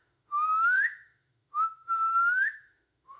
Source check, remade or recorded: remade